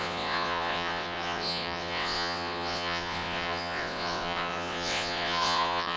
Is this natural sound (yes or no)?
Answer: no